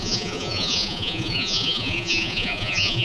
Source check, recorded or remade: remade